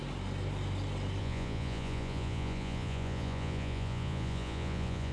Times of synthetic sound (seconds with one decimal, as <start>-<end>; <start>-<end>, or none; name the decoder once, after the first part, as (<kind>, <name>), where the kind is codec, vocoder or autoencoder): 1.2-5.1 (vocoder, Vocos)